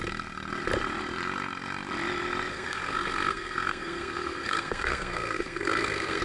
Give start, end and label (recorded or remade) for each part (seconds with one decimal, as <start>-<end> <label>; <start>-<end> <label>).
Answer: 0.0-2.5 recorded; 2.5-6.2 remade